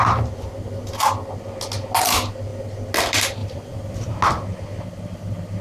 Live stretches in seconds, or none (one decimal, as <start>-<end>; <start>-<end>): 0.0-3.4; 4.1-5.6